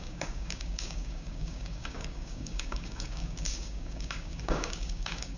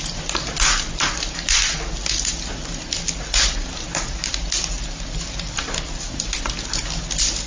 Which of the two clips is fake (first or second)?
first